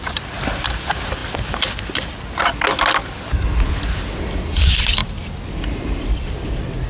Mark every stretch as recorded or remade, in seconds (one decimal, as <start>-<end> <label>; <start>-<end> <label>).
0.0-6.9 recorded

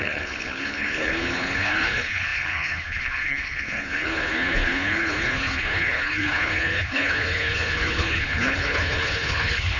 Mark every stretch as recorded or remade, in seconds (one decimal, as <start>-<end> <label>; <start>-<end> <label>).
0.0-9.8 remade

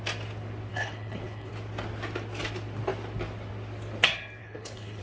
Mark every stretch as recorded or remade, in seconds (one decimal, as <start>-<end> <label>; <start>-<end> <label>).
0.0-0.7 recorded; 0.7-1.5 remade; 1.5-4.4 recorded; 4.4-5.0 remade

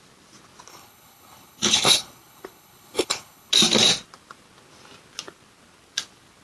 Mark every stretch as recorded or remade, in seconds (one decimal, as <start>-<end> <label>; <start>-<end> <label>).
0.0-0.7 recorded; 0.7-3.5 remade; 3.5-6.4 recorded

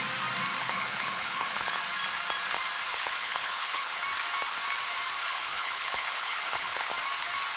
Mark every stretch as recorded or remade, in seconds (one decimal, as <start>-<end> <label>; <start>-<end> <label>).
0.0-0.6 recorded; 0.6-1.8 remade; 1.8-2.9 recorded; 2.9-4.0 remade; 4.0-5.2 recorded; 5.2-6.9 remade; 6.9-7.6 recorded